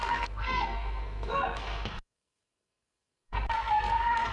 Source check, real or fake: fake